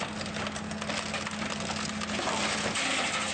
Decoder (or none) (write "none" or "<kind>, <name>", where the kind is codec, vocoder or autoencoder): none